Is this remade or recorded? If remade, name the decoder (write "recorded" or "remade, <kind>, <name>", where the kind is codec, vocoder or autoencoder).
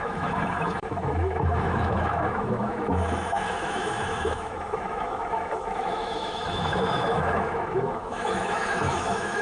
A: remade, autoencoder, DAC-VAE